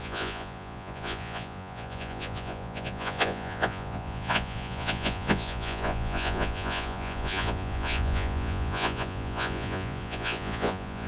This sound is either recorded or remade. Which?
remade